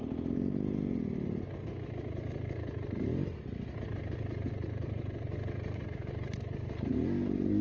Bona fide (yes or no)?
yes